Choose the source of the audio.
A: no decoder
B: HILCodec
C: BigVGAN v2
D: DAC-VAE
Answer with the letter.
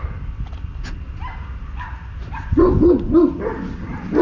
A